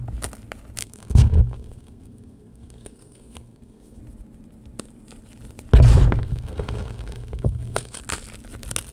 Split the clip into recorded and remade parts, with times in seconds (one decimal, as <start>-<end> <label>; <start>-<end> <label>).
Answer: 0.0-0.8 recorded; 0.8-4.0 remade; 4.0-6.2 recorded; 6.2-8.0 remade; 8.0-8.9 recorded